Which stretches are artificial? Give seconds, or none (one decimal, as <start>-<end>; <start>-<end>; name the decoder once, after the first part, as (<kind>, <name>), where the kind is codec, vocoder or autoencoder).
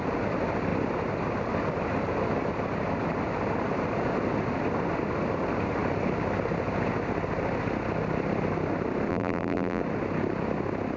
9.1-9.8 (vocoder, BigVGAN v2)